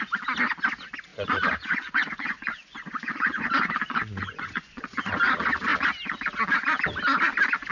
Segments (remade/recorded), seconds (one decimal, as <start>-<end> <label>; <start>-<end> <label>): 0.0-1.1 recorded; 1.1-5.1 remade; 5.1-7.7 recorded